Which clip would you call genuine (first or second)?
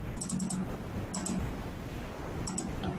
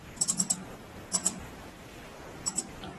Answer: first